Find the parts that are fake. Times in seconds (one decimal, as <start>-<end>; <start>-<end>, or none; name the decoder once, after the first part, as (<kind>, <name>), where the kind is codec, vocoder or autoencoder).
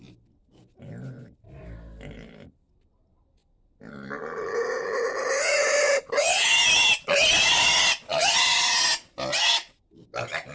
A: none